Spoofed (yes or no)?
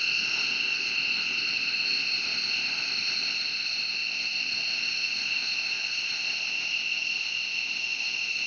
yes